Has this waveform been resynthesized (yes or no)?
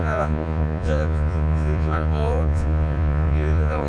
yes